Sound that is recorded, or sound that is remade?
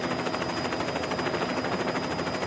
recorded